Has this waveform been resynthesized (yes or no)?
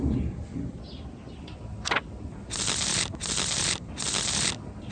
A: no